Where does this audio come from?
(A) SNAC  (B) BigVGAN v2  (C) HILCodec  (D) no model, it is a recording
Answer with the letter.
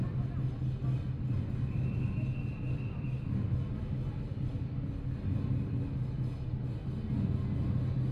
D